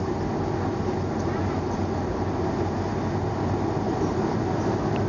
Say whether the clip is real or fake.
real